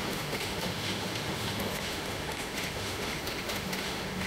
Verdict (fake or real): fake